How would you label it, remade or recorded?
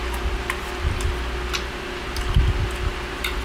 recorded